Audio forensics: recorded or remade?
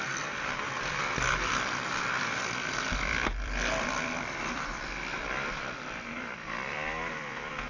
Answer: remade